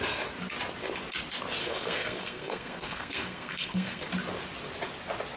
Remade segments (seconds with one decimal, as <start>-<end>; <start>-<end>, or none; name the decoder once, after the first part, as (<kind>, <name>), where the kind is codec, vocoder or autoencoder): 1.6-4.1 (codec, SNAC)